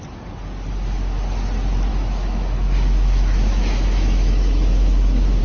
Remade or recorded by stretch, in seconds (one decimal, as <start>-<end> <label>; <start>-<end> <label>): 0.0-1.9 recorded; 1.9-5.4 remade